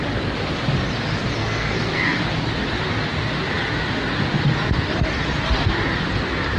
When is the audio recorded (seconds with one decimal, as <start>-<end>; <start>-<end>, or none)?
0.0-1.4; 2.2-6.6